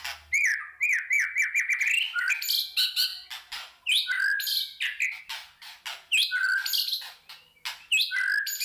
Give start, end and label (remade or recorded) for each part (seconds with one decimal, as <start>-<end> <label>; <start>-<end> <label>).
0.0-0.5 recorded; 0.5-2.3 remade; 2.3-8.6 recorded